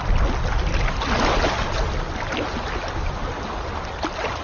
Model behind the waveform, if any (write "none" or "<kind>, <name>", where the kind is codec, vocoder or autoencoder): none